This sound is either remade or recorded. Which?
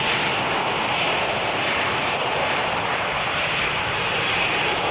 recorded